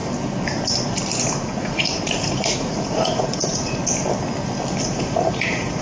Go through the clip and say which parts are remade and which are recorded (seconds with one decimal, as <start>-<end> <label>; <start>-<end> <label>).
0.0-1.1 recorded; 1.1-3.8 remade; 3.8-4.8 recorded; 4.8-5.8 remade